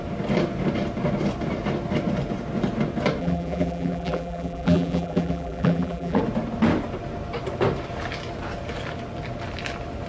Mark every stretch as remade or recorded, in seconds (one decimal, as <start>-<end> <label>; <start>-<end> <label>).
0.0-3.2 recorded; 3.2-6.2 remade; 6.2-10.1 recorded